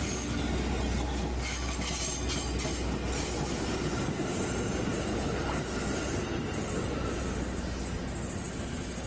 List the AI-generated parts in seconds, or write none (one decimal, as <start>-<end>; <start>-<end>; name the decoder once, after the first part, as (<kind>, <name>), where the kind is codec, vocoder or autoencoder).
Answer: 5.1-5.6 (codec, HILCodec)